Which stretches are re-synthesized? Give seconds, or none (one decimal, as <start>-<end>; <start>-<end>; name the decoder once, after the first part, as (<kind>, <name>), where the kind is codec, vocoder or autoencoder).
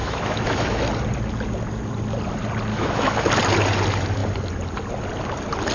0.0-0.8 (autoencoder, DAC-VAE); 2.7-3.3